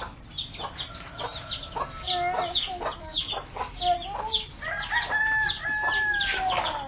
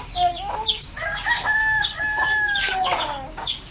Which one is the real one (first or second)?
first